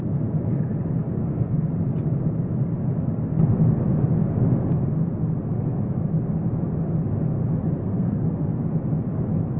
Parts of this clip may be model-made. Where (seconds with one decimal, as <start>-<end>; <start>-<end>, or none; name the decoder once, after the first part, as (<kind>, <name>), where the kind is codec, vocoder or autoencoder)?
1.2-1.7 (codec, SNAC); 7.8-8.6